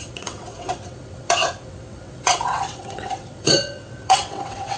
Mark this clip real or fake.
fake